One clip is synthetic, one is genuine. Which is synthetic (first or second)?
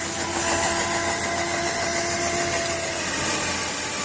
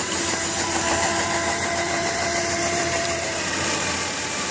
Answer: second